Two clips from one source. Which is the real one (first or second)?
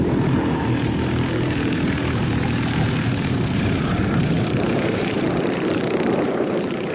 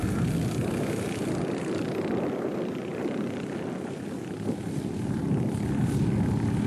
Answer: second